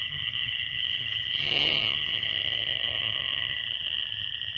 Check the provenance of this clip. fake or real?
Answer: fake